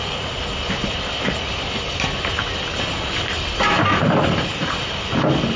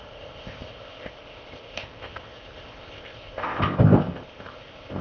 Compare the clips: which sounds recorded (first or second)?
first